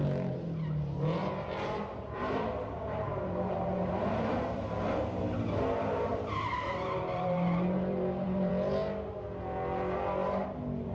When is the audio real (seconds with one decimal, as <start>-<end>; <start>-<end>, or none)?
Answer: 0.0-1.2; 5.2-6.1; 8.5-10.9